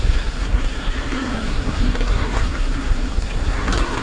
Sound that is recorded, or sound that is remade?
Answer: remade